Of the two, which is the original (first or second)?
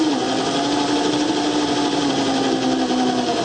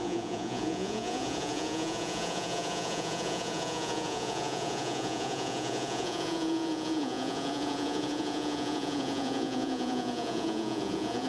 first